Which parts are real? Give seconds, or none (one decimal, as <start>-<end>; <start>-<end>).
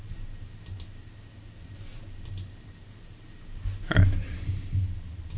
0.0-5.4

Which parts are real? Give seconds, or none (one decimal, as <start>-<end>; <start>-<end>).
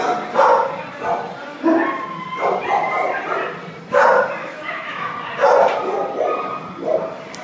0.0-4.4; 5.1-7.4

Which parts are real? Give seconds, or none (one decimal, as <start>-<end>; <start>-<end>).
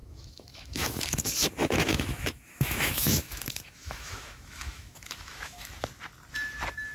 1.2-1.6; 5.7-6.9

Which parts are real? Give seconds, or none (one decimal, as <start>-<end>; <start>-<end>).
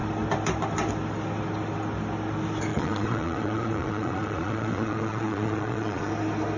0.0-2.7; 6.1-6.6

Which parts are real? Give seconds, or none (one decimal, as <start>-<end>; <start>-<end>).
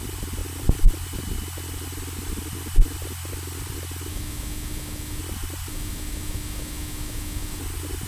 0.0-4.1; 5.2-5.7; 7.6-8.1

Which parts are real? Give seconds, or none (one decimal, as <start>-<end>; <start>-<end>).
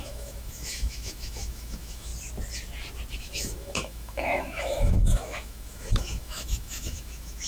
2.1-3.2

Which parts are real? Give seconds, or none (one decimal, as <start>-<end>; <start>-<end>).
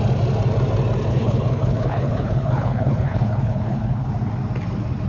0.0-1.1; 4.1-5.1